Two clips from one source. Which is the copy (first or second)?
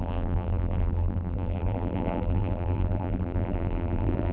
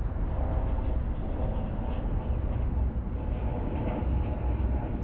first